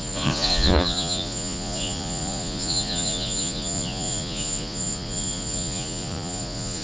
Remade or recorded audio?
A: remade